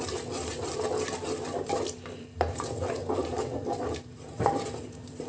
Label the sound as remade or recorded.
remade